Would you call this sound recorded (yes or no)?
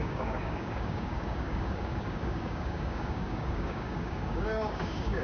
no